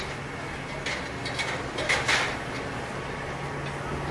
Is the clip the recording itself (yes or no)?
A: yes